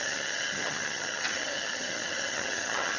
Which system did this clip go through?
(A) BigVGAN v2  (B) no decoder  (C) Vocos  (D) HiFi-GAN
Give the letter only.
D